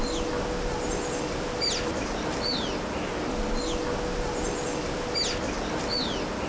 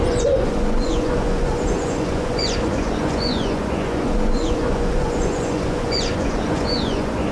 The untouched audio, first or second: first